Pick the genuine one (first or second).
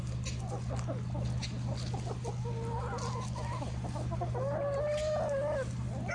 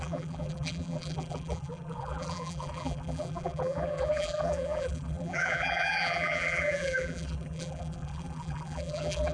first